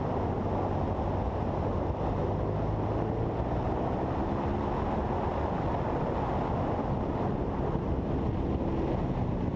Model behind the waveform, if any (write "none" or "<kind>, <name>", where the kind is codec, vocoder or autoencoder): none